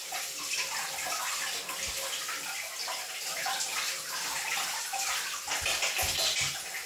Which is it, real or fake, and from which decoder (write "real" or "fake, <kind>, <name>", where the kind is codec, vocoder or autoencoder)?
real